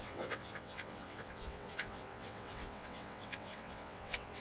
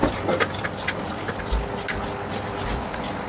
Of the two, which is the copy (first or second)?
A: first